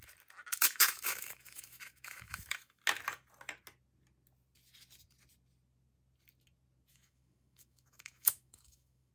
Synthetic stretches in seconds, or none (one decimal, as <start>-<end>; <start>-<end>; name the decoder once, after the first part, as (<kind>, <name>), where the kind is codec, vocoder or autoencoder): 0.5-2.8 (autoencoder, DAC-VAE); 6.9-9.1